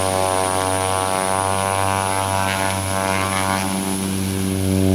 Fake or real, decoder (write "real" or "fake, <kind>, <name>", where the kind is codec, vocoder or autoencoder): real